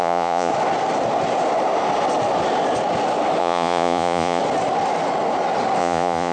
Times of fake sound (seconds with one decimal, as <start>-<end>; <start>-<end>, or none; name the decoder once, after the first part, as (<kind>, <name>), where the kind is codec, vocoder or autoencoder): 0.0-0.5 (vocoder, Vocos); 3.4-4.4; 5.8-6.3